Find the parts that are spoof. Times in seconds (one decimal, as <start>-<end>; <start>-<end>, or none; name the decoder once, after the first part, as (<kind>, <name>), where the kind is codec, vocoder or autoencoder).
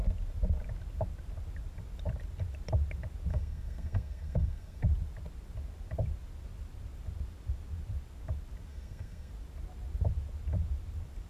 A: 3.3-4.8 (codec, SNAC); 8.7-9.3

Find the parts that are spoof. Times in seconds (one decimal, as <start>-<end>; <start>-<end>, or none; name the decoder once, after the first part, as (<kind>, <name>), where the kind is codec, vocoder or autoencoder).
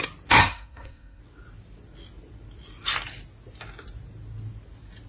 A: 0.4-1.2 (codec, SNAC)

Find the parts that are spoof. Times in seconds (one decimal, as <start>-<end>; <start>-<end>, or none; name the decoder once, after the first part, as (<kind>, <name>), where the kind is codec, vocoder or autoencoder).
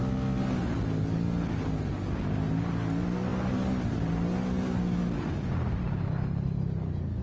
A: none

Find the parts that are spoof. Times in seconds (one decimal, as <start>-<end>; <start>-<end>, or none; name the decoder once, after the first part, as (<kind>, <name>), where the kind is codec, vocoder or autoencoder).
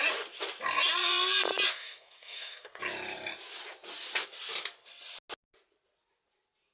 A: 1.7-2.8 (codec, SNAC)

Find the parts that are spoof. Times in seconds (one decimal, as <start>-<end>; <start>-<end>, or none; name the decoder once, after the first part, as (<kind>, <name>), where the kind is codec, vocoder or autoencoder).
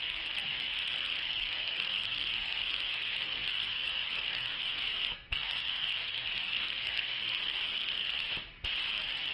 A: 0.0-8.3 (codec, SNAC); 8.9-9.3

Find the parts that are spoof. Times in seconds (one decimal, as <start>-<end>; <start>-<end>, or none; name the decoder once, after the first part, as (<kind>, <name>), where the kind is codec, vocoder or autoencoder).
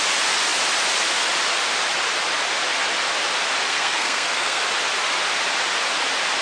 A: 3.7-4.6 (codec, SNAC)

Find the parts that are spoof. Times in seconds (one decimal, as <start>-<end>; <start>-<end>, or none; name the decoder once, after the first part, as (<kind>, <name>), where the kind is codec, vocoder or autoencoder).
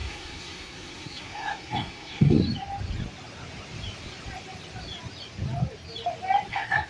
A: 0.0-2.4 (codec, SNAC); 6.5-6.9